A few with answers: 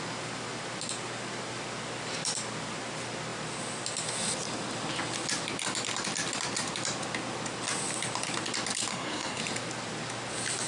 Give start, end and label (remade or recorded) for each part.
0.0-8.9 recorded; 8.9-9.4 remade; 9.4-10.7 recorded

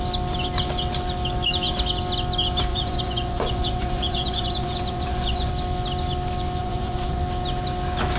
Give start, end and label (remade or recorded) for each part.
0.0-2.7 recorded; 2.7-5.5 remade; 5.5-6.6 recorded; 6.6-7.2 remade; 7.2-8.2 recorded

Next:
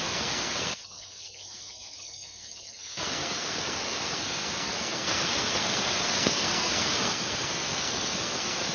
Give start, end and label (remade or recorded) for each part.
0.0-8.7 remade

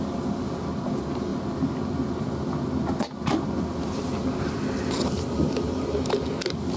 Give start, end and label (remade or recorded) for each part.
0.0-6.8 recorded

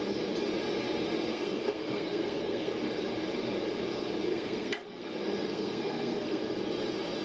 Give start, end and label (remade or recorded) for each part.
0.0-1.3 recorded; 1.3-2.7 remade; 2.7-4.3 recorded; 4.3-5.1 remade; 5.1-5.5 recorded; 5.5-6.4 remade; 6.4-7.2 recorded